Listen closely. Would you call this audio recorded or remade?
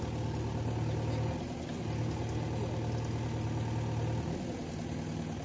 recorded